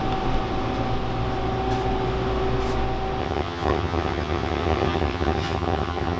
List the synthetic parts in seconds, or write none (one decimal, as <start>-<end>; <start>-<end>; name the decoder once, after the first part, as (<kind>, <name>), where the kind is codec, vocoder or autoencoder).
3.2-6.2 (vocoder, HiFi-GAN)